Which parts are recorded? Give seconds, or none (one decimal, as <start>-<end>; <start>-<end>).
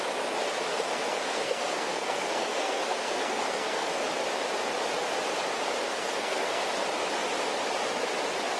0.0-0.7; 3.9-5.8; 6.7-8.6